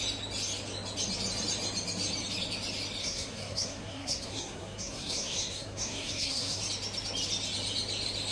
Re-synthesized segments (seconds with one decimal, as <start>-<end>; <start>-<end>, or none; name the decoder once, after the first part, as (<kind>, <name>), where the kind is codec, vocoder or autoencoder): 3.0-6.6 (codec, SNAC)